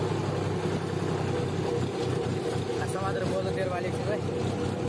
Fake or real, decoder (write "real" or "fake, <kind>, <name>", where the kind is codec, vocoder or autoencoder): real